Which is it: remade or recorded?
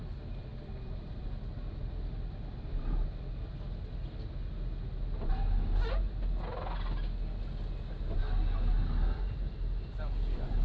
recorded